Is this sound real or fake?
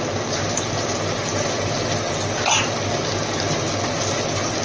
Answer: real